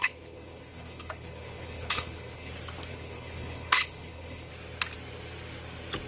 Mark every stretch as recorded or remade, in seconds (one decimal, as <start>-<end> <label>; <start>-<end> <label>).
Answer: 0.0-2.5 remade; 2.5-2.9 recorded; 2.9-4.5 remade; 4.5-6.1 recorded